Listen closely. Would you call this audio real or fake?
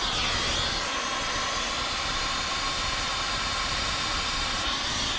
real